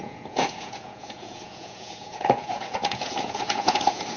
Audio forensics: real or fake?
fake